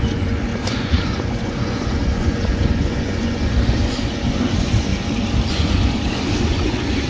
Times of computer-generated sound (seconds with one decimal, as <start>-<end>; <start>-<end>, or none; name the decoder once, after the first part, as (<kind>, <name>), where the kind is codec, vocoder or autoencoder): 0.0-4.9 (vocoder, Vocos); 5.5-7.1